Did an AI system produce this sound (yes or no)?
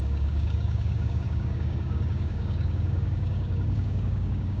yes